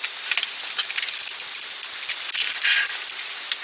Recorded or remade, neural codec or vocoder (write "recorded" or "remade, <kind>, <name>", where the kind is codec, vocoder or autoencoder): recorded